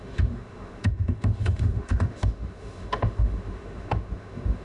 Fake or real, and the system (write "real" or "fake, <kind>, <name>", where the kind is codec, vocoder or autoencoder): fake, autoencoder, DAC-VAE